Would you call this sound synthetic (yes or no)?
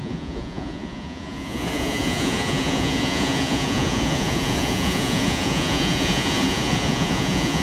yes